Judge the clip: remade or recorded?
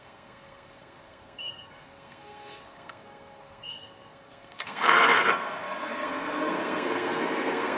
remade